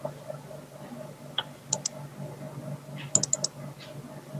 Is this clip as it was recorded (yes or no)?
yes